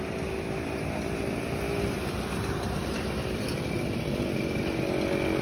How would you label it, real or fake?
real